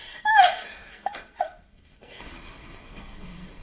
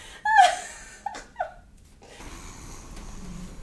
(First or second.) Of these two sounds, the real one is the second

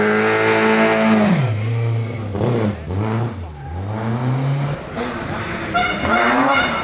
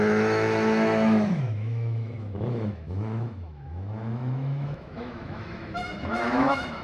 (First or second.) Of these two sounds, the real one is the first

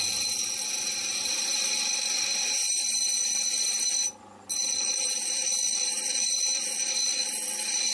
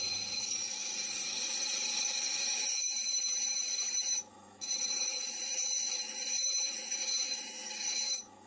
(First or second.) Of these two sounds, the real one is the first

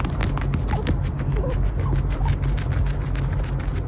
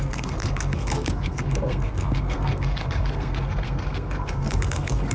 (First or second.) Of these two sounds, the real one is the first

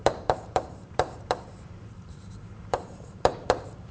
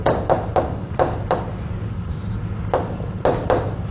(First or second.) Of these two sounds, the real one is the second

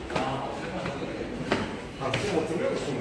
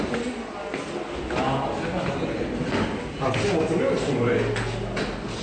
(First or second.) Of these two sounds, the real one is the second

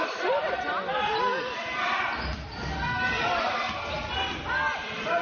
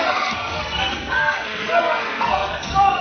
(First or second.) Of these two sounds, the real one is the first